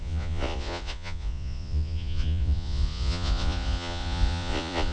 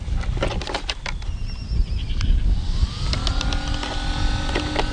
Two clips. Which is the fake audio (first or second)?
first